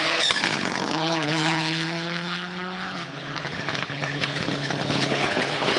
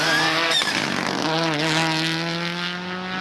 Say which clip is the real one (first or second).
second